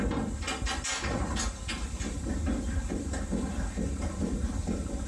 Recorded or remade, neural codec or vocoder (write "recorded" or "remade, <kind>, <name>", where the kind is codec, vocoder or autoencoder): recorded